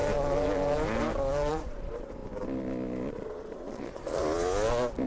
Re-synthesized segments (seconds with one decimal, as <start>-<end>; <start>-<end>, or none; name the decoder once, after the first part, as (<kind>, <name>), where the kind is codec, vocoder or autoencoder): 1.5-2.2 (vocoder, Vocos); 3.1-4.2

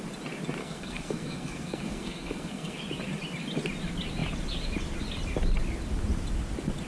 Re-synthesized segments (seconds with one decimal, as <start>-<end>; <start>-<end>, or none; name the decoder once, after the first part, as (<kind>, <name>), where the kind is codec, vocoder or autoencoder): 0.6-2.8 (codec, SNAC)